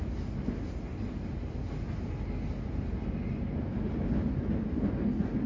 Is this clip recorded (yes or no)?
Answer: yes